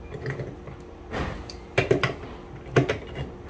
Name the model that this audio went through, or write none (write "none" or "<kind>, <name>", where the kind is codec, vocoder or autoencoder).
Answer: none